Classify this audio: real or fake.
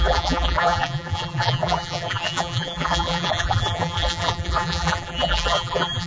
fake